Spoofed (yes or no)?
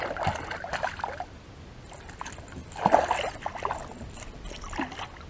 no